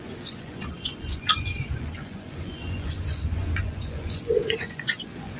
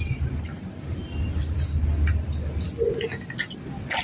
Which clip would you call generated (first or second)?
first